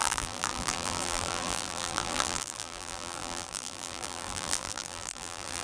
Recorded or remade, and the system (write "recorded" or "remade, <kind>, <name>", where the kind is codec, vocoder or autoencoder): remade, vocoder, BigVGAN v2